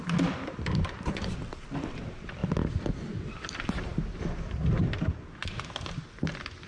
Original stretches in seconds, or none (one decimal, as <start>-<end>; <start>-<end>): 2.4-3.3